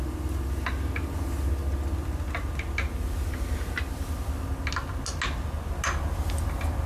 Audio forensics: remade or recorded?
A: recorded